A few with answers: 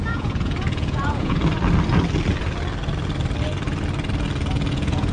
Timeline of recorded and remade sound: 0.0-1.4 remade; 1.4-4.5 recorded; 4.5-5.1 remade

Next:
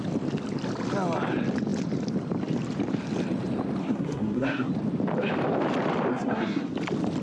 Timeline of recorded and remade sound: 0.0-3.8 recorded; 3.8-4.7 remade; 4.7-6.1 recorded; 6.1-6.7 remade; 6.7-7.2 recorded

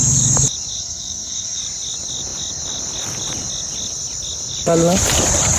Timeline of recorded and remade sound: 0.0-0.8 recorded; 0.8-1.6 remade; 1.6-5.6 recorded

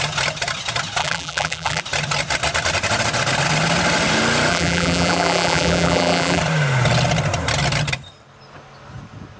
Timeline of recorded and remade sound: 0.0-1.0 recorded; 1.0-1.8 remade; 1.8-4.5 recorded; 4.5-6.4 remade; 6.4-9.4 recorded

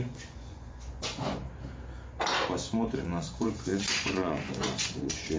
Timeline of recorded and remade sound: 0.0-1.4 remade; 1.4-2.7 recorded; 2.7-5.4 remade

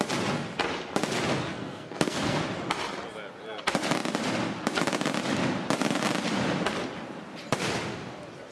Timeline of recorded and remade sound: 0.0-1.5 recorded; 1.5-2.4 remade; 2.4-8.5 recorded